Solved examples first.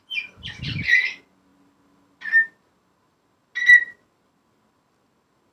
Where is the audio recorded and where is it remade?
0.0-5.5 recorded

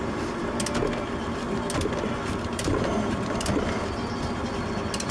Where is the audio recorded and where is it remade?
0.0-0.6 remade; 0.6-2.5 recorded; 2.5-3.5 remade; 3.5-5.1 recorded

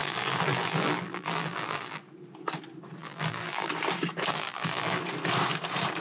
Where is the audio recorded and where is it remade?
0.0-2.0 remade; 2.0-3.0 recorded; 3.0-3.7 remade; 3.7-4.3 recorded; 4.3-5.0 remade; 5.0-6.0 recorded

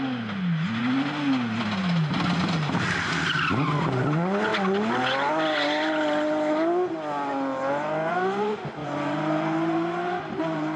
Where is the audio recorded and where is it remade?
0.0-8.8 recorded; 8.8-10.8 remade

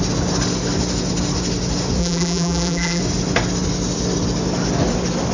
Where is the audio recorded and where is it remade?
0.0-2.0 recorded; 2.0-3.0 remade; 3.0-5.3 recorded